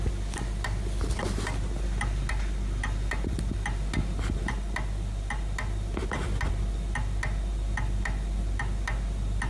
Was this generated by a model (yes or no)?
no